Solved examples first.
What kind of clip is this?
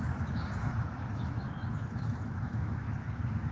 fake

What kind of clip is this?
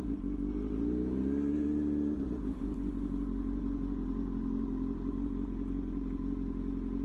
real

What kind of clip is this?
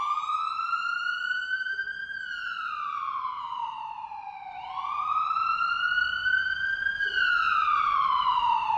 fake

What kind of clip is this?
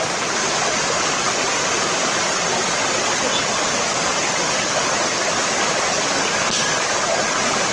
real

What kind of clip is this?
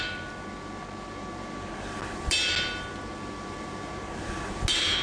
real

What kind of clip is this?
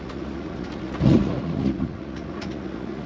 fake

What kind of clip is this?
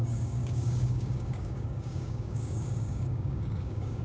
fake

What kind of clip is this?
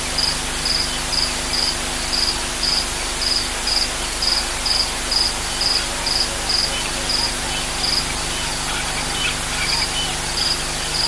real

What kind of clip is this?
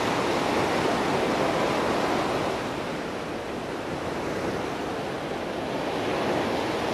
real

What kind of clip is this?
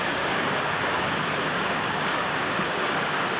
fake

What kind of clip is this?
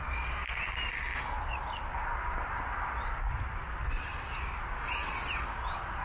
real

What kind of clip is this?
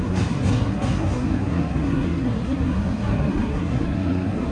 fake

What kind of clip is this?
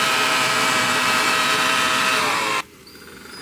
fake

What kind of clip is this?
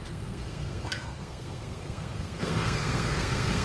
fake